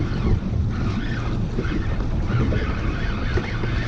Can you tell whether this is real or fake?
real